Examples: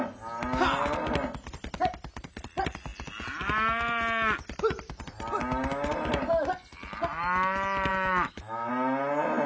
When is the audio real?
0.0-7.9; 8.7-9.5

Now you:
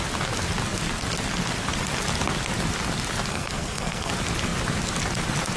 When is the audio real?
0.0-3.3; 4.1-5.6

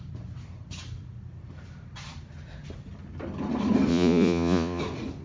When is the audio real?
0.0-3.9; 4.8-5.2

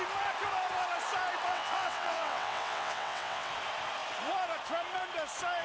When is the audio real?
0.0-1.5; 3.5-5.6

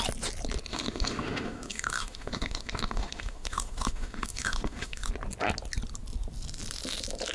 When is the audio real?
0.0-0.7; 5.1-7.3

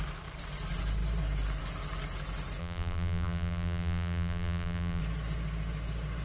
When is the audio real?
0.0-2.6; 5.0-6.2

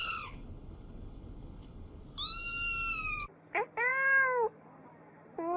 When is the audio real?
2.0-5.6